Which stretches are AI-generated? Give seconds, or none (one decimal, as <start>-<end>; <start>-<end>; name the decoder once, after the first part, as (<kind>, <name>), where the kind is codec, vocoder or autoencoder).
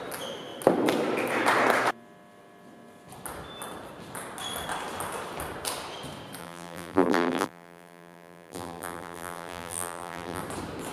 6.4-10.4 (vocoder, BigVGAN v2)